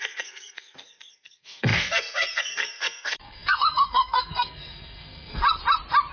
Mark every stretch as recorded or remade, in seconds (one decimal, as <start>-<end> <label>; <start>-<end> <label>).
0.0-5.4 remade; 5.4-6.1 recorded